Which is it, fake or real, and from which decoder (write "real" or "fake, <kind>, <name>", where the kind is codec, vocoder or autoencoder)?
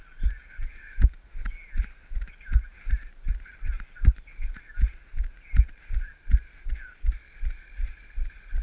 real